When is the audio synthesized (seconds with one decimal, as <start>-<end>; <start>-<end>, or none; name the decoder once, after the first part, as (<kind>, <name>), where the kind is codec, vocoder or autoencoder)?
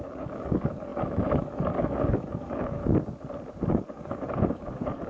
0.0-2.8 (codec, DAC); 3.7-5.1